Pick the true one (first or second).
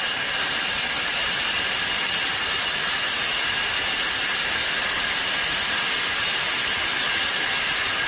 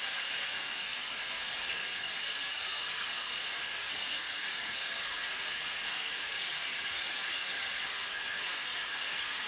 first